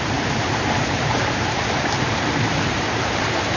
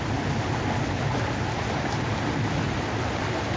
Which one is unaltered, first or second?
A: second